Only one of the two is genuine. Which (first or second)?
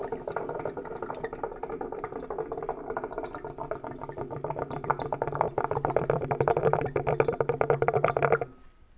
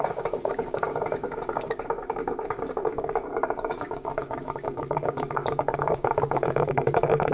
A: first